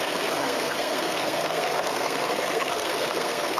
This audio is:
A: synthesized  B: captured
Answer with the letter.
A